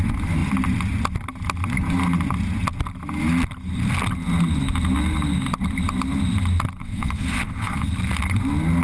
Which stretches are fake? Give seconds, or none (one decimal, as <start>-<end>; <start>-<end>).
6.8-7.9